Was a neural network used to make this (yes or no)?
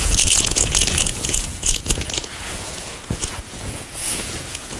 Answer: yes